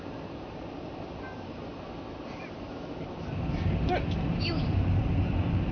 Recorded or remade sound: recorded